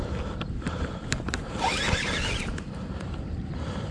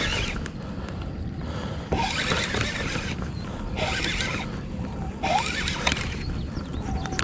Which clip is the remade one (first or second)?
first